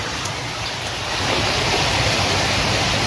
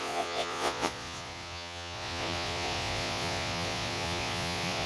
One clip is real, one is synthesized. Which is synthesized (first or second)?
second